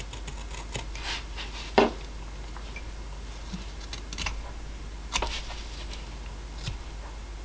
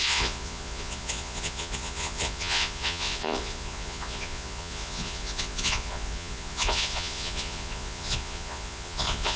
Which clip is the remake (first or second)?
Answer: second